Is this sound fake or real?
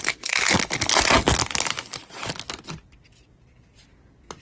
real